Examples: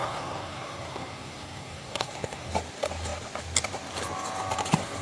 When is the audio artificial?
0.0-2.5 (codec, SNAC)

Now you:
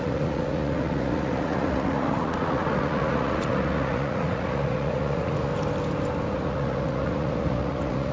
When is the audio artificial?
0.0-5.5 (vocoder, Vocos); 6.3-8.1

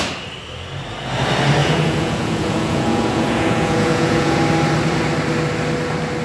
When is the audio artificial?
1.6-4.4 (vocoder, Vocos)

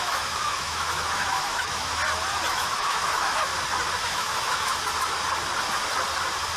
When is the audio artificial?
0.0-2.0 (autoencoder, DAC-VAE); 2.5-3.5; 4.0-4.7